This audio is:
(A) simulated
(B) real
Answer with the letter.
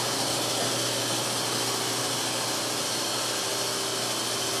B